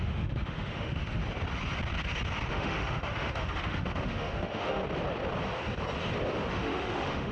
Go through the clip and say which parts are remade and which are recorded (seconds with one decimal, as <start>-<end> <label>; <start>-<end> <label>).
0.0-1.2 remade; 1.2-2.5 recorded; 2.5-4.8 remade; 4.8-6.5 recorded; 6.5-7.3 remade